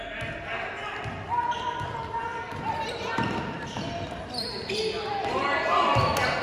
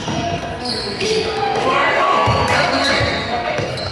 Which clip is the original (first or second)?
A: first